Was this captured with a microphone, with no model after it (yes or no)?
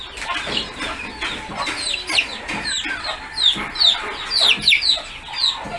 yes